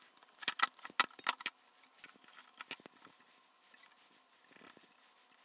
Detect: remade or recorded recorded